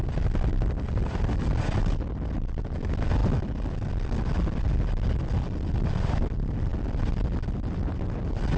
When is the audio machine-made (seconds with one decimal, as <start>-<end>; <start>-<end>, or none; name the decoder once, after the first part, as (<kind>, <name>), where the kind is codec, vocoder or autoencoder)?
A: none